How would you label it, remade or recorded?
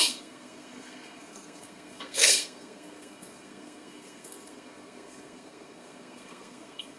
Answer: remade